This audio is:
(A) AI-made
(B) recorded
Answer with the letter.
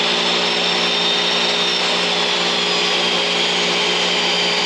B